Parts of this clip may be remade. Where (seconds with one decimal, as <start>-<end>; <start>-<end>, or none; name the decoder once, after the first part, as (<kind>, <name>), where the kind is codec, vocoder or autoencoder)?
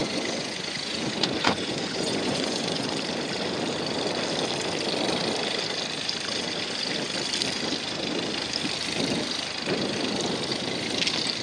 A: 0.0-2.9 (vocoder, Vocos)